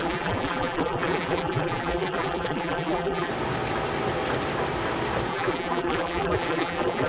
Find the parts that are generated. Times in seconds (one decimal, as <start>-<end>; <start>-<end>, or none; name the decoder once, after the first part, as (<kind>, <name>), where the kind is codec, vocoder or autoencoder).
0.0-3.3 (vocoder, BigVGAN v2); 5.3-7.1

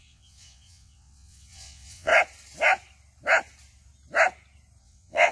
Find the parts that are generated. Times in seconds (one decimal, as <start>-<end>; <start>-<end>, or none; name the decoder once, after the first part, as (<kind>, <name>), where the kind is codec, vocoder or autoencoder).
0.0-2.1 (vocoder, WaveNeXt); 4.8-5.3

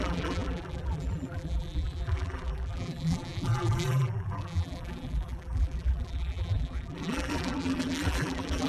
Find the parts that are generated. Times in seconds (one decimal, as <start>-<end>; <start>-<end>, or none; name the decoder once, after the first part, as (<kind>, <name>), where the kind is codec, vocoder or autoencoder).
0.0-8.7 (vocoder, BigVGAN v2)

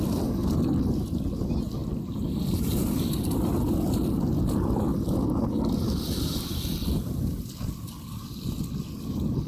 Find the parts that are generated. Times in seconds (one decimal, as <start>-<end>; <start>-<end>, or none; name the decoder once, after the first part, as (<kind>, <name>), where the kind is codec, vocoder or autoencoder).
none

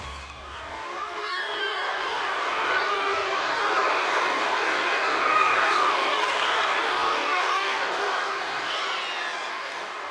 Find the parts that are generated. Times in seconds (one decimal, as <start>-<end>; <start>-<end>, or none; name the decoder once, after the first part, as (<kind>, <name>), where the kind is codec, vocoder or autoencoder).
0.0-8.8 (codec, DAC); 9.5-10.1

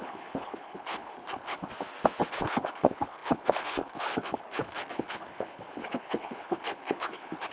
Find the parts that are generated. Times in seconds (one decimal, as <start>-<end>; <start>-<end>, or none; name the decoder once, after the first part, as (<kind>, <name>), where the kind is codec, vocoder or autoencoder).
0.0-1.7 (codec, HILCodec); 2.3-7.5